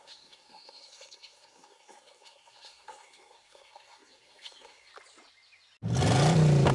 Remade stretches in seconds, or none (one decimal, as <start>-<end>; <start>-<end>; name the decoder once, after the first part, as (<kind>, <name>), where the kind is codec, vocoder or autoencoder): 0.0-4.9 (codec, SNAC)